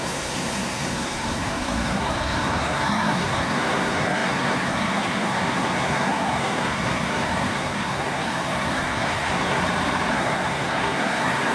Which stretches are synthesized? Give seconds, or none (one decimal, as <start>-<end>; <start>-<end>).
0.0-9.6; 10.1-11.5